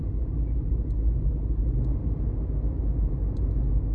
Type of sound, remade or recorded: recorded